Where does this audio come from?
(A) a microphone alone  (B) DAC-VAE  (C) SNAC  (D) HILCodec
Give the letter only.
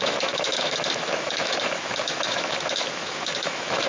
B